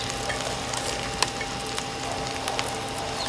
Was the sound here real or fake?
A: real